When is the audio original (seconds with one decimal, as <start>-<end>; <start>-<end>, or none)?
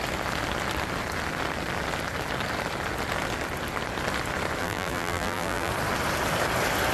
0.0-4.6; 5.7-6.9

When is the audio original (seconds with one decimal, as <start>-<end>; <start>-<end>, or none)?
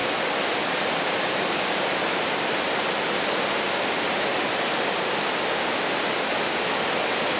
0.0-7.4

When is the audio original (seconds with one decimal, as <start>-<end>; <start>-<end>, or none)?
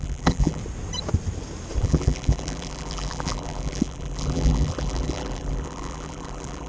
0.6-1.8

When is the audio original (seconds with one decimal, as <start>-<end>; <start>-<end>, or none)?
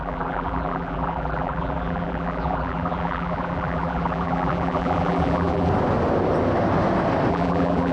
5.7-7.3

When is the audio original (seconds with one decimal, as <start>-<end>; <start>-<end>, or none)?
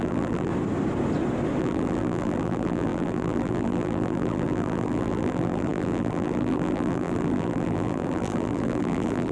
0.5-1.6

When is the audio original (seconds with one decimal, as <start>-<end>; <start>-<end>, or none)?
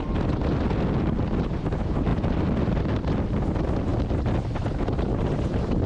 0.0-5.9